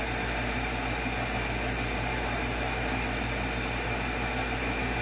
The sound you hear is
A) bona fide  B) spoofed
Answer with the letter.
A